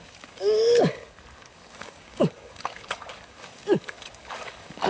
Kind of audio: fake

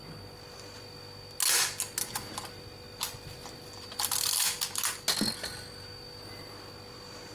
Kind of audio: real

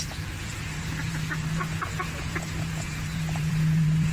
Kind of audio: fake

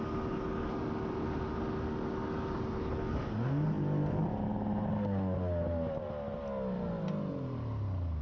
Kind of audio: real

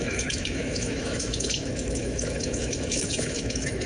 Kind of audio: fake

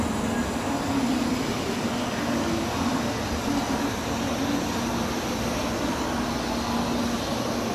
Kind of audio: real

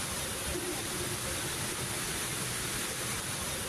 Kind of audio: real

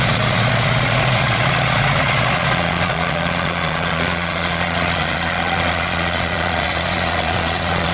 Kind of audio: fake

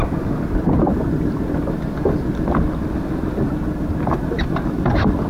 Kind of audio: real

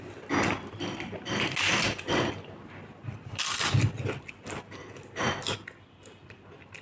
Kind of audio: real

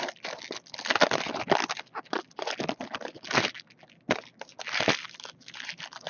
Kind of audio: real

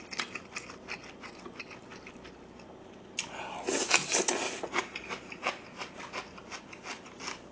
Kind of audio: real